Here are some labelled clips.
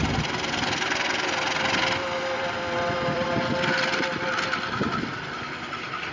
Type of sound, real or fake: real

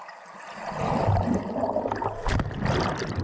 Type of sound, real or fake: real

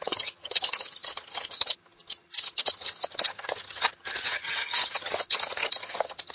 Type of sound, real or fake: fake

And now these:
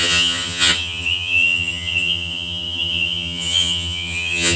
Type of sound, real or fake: fake